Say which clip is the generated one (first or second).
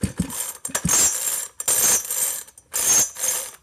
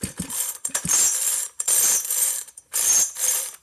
second